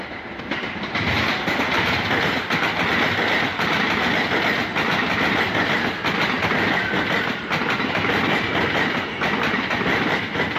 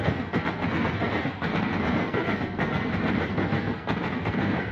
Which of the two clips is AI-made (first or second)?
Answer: second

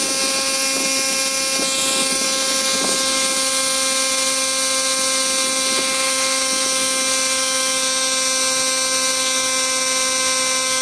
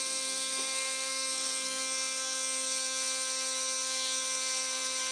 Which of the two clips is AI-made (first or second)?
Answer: second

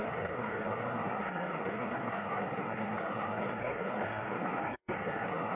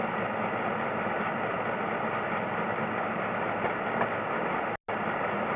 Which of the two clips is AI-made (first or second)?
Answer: first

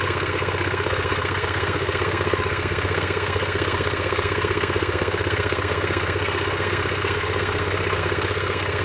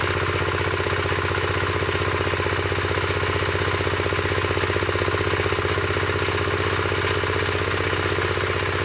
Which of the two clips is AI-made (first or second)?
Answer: first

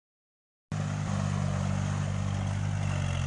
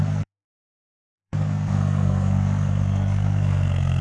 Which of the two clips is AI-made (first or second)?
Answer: second